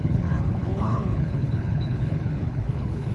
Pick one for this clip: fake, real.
fake